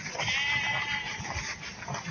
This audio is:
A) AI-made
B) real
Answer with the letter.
B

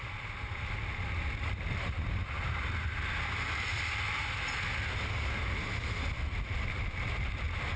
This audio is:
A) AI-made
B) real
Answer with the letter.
B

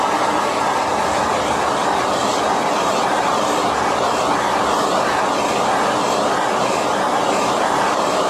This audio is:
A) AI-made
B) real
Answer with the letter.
B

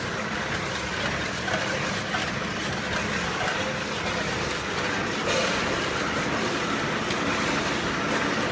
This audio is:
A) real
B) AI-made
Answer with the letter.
A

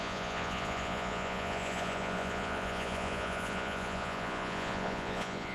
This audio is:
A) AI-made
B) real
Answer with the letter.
A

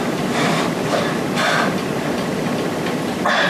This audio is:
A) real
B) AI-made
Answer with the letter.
B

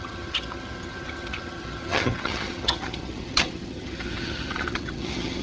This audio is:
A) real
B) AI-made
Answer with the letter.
B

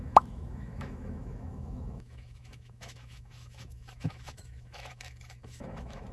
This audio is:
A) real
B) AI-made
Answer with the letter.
B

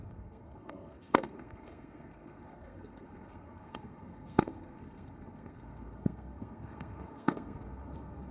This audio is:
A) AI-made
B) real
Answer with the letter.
A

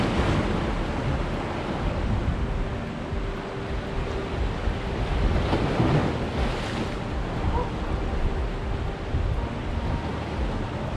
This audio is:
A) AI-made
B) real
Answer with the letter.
B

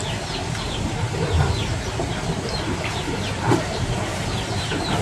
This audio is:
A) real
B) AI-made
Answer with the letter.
A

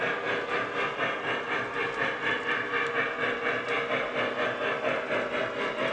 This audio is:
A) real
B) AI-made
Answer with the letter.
A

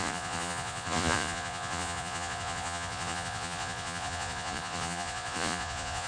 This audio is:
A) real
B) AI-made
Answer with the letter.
B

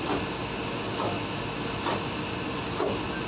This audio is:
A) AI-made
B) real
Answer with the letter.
B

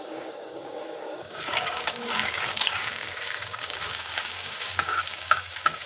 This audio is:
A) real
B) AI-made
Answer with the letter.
B